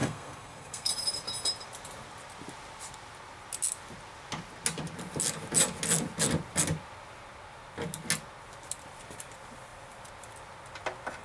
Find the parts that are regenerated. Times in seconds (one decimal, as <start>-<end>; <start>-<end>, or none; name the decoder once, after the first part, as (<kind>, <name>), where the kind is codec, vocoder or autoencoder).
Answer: 0.0-0.9 (codec, SNAC)